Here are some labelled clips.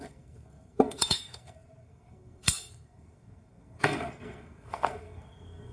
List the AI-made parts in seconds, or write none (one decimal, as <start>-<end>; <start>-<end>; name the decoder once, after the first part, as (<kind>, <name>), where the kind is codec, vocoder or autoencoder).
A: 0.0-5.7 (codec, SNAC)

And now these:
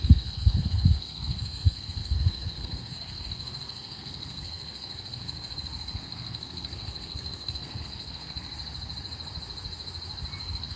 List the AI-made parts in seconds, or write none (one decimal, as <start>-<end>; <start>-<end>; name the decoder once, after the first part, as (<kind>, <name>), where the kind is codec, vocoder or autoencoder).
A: 0.0-8.5 (codec, SNAC); 10.4-10.8

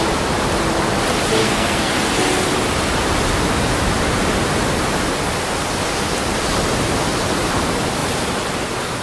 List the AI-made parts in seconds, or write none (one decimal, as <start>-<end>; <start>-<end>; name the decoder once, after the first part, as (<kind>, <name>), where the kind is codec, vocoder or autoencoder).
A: 1.4-1.9 (codec, SNAC)

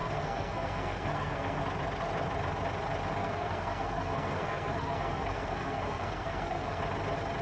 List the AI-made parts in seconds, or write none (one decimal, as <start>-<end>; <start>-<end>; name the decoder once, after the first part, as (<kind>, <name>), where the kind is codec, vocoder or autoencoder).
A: 0.0-1.6 (codec, SNAC); 3.2-6.8